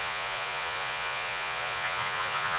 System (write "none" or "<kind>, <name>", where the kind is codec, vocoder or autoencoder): vocoder, Vocos